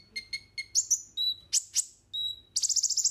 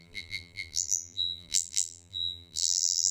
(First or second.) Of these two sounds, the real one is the first